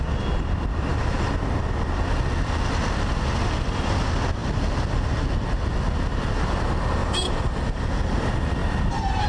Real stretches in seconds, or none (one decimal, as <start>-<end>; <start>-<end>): 0.0-0.9; 1.6-7.0; 7.9-8.6

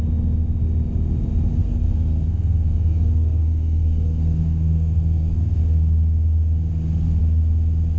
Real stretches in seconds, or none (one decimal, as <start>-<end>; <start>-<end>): 0.0-1.6; 5.6-8.0

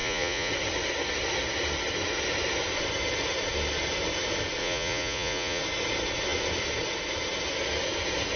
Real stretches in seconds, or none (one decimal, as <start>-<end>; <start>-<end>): 0.5-4.6; 5.6-8.4

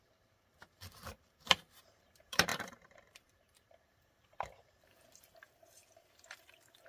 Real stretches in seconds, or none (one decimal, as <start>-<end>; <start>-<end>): none